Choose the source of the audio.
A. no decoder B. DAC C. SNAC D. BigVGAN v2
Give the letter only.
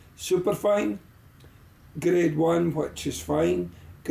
A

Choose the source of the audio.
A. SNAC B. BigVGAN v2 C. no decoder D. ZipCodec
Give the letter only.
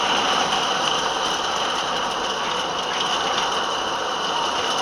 B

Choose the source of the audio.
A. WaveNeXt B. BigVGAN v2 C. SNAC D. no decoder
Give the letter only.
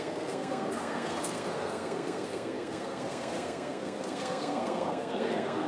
C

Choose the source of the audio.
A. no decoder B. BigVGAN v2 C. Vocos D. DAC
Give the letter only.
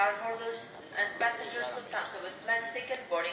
A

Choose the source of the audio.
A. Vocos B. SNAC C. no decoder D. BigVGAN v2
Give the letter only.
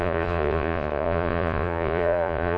A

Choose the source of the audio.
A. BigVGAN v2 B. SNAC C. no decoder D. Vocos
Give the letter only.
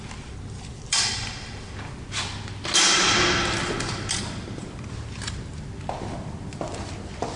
C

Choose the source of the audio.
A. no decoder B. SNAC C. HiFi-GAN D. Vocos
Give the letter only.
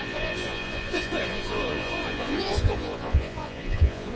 D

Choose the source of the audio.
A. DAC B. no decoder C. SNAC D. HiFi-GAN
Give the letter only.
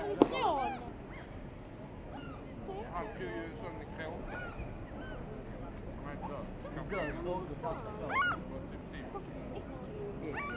B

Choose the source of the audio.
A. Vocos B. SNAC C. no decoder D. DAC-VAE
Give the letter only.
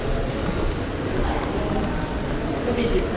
C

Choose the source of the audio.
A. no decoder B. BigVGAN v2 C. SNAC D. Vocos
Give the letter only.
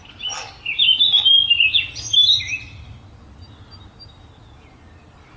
A